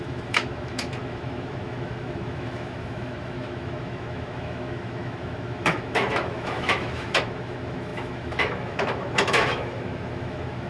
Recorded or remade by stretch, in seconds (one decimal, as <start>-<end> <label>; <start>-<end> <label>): 0.0-10.7 remade

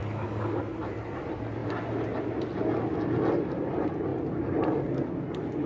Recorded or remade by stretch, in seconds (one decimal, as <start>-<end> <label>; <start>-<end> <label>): 0.0-0.6 remade; 0.6-5.7 recorded

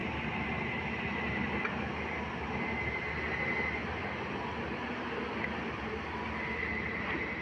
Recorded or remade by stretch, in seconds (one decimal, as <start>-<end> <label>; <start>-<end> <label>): 0.0-7.4 recorded